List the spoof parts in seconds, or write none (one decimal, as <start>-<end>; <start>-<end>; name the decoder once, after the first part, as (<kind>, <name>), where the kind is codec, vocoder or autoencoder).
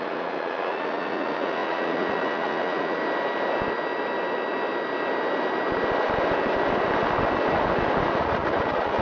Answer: 0.0-3.0 (vocoder, Vocos); 8.2-9.0